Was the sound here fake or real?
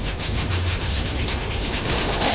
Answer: fake